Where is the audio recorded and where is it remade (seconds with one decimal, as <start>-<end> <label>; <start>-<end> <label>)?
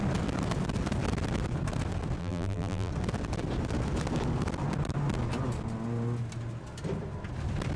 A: 0.0-2.2 recorded; 2.2-2.9 remade; 2.9-7.8 recorded